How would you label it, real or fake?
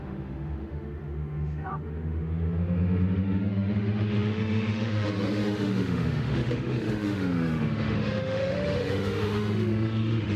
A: fake